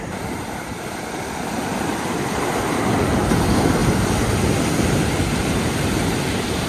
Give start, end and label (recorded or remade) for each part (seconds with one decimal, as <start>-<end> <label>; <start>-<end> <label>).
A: 0.0-1.9 remade; 1.9-3.3 recorded; 3.3-3.8 remade; 3.8-5.0 recorded; 5.0-6.7 remade